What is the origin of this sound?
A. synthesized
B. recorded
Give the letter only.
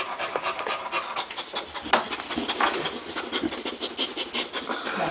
B